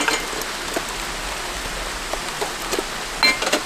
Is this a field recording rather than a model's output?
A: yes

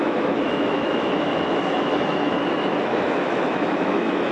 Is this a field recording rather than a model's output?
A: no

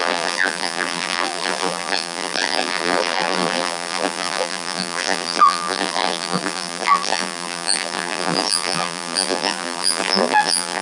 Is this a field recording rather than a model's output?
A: no